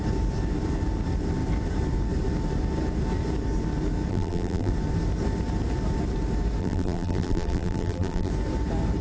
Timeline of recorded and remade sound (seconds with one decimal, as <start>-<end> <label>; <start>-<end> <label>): 0.0-4.1 recorded; 4.1-4.7 remade; 4.7-6.6 recorded; 6.6-8.3 remade; 8.3-9.0 recorded